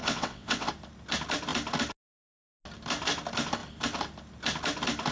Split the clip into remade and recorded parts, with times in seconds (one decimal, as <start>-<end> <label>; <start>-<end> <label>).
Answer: 0.0-0.7 remade; 0.7-5.1 recorded